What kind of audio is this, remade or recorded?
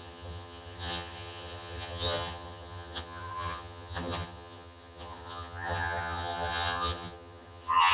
remade